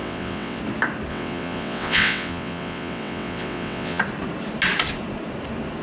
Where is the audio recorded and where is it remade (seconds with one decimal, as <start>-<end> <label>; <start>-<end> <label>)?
0.0-0.6 remade; 0.6-1.1 recorded; 1.1-4.0 remade; 4.0-5.8 recorded